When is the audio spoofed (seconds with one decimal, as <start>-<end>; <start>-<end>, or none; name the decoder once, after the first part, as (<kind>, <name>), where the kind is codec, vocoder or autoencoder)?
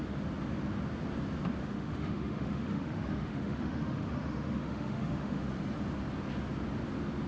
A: 1.6-5.5 (autoencoder, DAC-VAE)